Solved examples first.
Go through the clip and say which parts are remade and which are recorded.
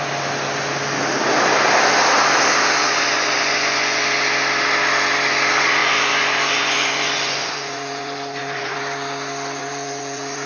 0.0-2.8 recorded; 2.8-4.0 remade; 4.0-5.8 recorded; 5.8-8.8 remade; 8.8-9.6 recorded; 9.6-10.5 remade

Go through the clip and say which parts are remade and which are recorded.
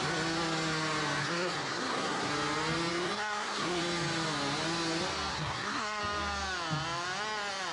0.0-1.2 recorded; 1.2-2.3 remade; 2.3-2.9 recorded; 2.9-3.8 remade; 3.8-5.3 recorded; 5.3-6.0 remade; 6.0-7.7 recorded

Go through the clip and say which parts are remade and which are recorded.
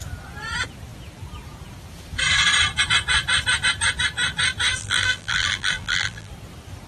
0.0-4.8 recorded; 4.8-6.3 remade; 6.3-6.9 recorded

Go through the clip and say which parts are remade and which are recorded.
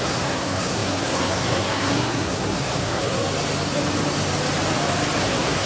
0.0-3.2 remade; 3.2-5.2 recorded; 5.2-5.7 remade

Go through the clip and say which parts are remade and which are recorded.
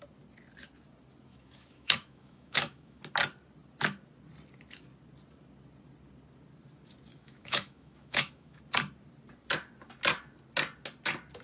0.0-1.3 recorded; 1.3-3.0 remade; 3.0-7.1 recorded; 7.1-8.6 remade; 8.6-11.4 recorded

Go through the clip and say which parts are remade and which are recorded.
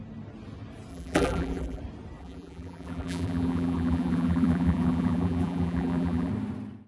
0.0-0.9 recorded; 0.9-1.8 remade; 1.8-2.2 recorded; 2.2-6.3 remade; 6.3-6.9 recorded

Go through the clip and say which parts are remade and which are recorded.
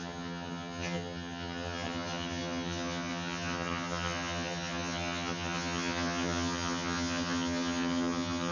0.0-8.5 remade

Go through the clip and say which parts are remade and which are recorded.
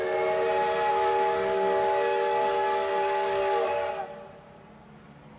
0.0-0.9 recorded; 0.9-3.9 remade; 3.9-5.4 recorded